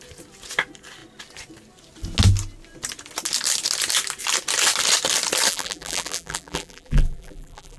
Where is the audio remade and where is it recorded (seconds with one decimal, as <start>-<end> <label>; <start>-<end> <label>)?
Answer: 0.0-5.5 recorded; 5.5-7.8 remade